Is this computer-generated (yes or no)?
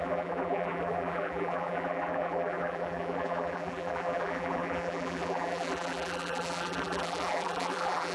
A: yes